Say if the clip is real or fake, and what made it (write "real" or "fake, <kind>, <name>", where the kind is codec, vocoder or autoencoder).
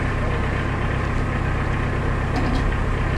real